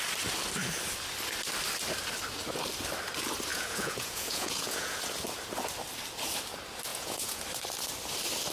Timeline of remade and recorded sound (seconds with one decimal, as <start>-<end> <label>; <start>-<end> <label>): 0.0-3.5 recorded; 3.5-5.0 remade; 5.0-6.9 recorded; 6.9-7.4 remade; 7.4-8.5 recorded